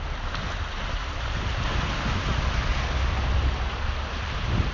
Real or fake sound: real